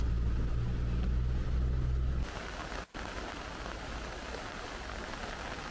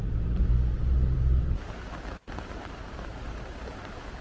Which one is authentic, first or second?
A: first